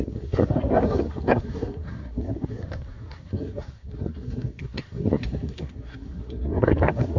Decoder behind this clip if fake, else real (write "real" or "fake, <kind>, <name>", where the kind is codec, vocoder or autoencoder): fake, codec, SNAC